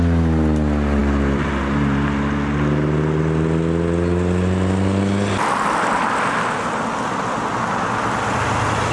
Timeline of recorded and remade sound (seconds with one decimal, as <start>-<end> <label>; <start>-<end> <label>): 0.0-8.9 recorded